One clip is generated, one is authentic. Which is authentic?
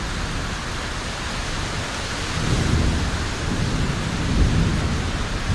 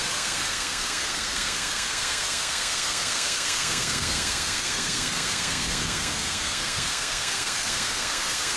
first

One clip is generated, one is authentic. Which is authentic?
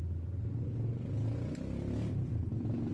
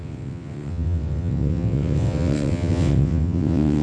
first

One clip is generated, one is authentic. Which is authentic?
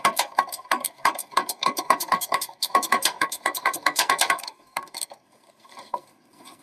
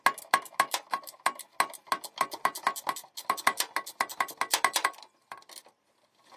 second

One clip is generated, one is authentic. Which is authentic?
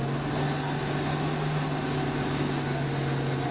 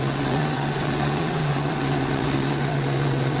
first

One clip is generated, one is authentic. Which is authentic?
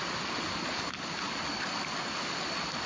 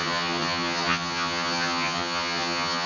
first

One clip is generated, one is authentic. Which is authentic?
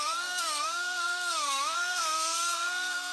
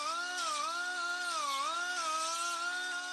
second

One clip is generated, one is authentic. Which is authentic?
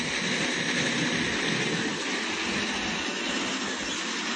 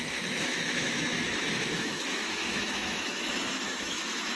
first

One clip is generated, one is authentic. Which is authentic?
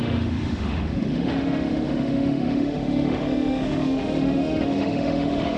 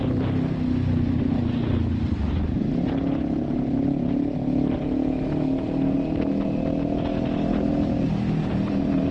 second